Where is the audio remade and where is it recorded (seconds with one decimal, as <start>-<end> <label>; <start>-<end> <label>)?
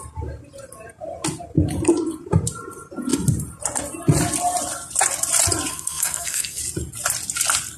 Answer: 0.0-5.7 recorded; 5.7-6.6 remade; 6.6-7.8 recorded